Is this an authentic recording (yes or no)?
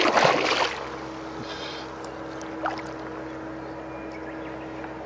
yes